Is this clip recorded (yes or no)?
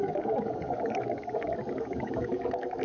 no